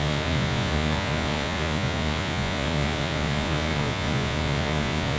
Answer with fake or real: fake